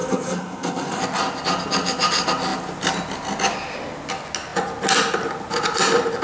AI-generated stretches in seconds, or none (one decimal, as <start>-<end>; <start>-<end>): 0.0-1.0